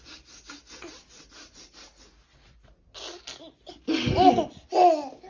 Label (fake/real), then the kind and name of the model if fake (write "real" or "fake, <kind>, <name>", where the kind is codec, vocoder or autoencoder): real